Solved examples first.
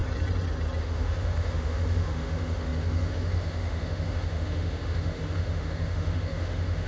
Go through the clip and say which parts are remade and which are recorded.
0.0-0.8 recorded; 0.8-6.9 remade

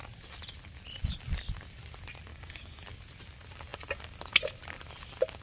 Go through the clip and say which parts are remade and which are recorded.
0.0-2.3 recorded; 2.3-2.8 remade; 2.8-5.4 recorded

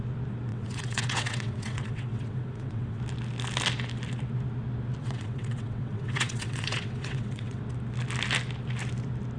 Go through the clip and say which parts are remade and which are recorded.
0.0-0.5 recorded; 0.5-3.0 remade; 3.0-5.0 recorded; 5.0-7.6 remade; 7.6-9.4 recorded

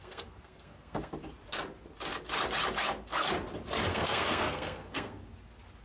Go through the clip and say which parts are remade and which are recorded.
0.0-1.1 remade; 1.1-3.9 recorded; 3.9-5.2 remade; 5.2-5.8 recorded

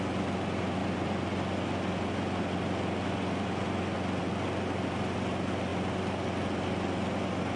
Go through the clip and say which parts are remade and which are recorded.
0.0-7.6 recorded